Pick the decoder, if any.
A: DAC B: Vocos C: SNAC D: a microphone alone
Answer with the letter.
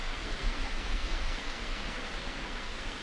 C